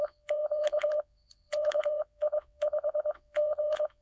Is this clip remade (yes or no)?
yes